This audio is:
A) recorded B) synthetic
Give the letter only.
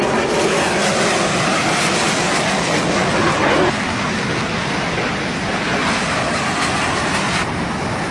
A